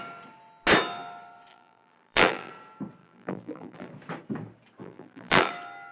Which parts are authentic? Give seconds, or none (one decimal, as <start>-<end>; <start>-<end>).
0.0-1.5; 2.5-3.0; 3.9-4.8; 5.5-5.9

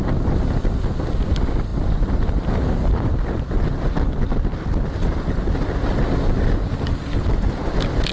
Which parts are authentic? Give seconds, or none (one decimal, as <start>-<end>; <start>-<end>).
0.0-8.1

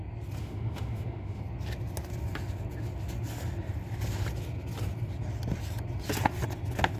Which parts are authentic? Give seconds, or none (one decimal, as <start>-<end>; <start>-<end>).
0.0-0.4; 1.4-7.0

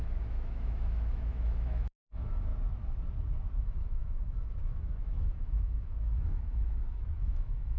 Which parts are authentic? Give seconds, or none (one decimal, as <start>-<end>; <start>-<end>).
2.5-3.6

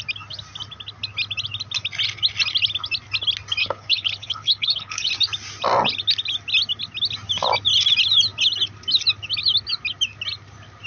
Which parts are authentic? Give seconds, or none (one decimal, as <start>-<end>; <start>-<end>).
0.0-3.6; 5.1-10.9

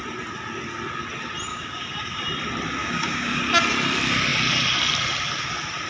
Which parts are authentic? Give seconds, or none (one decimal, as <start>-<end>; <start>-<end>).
0.0-1.5; 2.2-2.8; 3.4-5.9

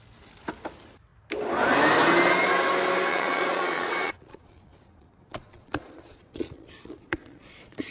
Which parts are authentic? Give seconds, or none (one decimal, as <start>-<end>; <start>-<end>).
0.0-3.1

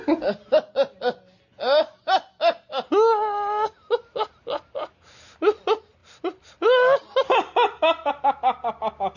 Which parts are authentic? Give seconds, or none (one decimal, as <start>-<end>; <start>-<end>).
0.0-9.2